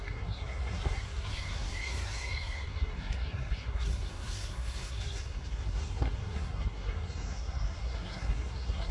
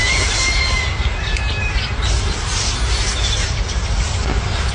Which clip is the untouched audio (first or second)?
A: second